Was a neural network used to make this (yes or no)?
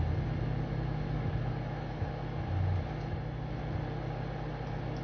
no